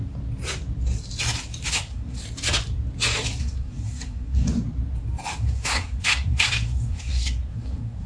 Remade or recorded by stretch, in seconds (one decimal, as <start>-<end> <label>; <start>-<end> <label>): 0.0-1.7 recorded; 1.7-2.2 remade; 2.2-3.4 recorded; 3.4-4.5 remade; 4.5-5.4 recorded; 5.4-8.1 remade